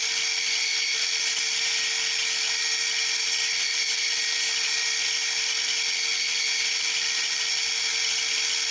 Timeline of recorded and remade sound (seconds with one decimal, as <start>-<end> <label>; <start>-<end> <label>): 0.0-8.7 recorded